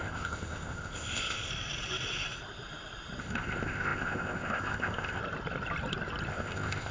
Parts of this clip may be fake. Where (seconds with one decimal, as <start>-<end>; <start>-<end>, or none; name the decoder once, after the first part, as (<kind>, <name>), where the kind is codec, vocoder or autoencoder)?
0.0-1.5 (codec, ZipCodec); 3.2-5.2; 6.3-6.9